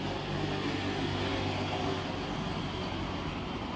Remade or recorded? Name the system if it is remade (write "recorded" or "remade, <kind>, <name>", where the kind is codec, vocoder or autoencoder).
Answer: recorded